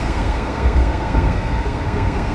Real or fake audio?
fake